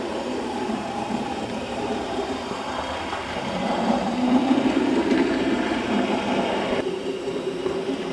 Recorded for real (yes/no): no